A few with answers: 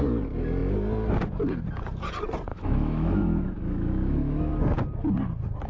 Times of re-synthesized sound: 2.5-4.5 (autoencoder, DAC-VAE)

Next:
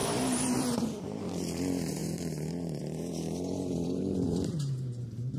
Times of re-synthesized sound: 1.0-5.4 (vocoder, BigVGAN v2)